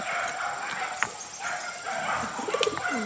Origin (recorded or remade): recorded